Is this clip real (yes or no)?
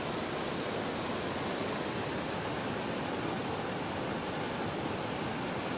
yes